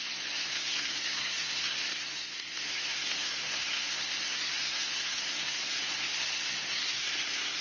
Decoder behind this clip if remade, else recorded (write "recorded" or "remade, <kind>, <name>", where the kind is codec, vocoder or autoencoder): remade, codec, SNAC